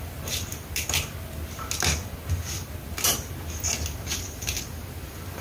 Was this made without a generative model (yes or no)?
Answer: yes